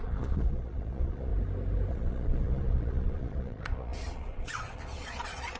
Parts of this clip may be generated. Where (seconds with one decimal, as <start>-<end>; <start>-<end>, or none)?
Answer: 0.0-1.3; 1.9-5.6